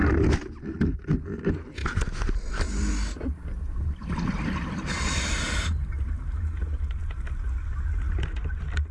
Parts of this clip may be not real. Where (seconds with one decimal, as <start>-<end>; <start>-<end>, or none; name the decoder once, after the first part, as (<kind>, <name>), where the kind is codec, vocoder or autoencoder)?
none